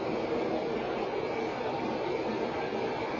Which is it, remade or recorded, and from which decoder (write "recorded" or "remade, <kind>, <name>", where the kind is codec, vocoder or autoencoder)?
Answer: recorded